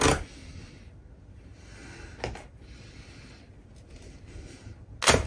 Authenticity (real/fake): real